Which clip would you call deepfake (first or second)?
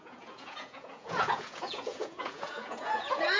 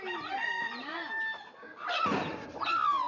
first